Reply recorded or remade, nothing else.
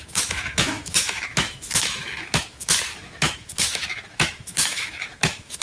remade